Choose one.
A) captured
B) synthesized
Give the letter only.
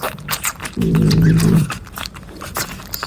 B